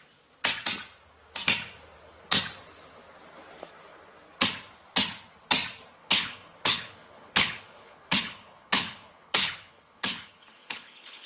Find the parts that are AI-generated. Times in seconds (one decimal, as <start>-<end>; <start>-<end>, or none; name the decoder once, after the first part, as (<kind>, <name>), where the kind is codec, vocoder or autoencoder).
6.0-11.3 (codec, HILCodec)